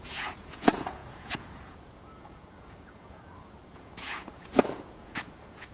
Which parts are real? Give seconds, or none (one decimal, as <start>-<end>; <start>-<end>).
none